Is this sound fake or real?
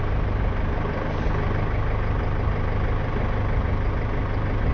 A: real